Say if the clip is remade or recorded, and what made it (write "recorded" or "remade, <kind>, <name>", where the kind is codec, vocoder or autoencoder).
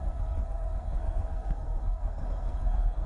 remade, codec, SNAC